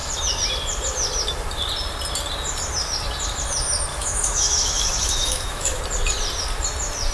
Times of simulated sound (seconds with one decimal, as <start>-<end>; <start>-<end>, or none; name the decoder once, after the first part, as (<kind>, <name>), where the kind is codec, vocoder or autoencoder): 3.9-5.8 (autoencoder, DAC-VAE)